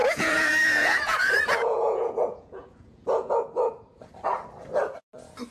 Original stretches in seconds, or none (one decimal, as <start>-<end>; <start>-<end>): 3.3-5.5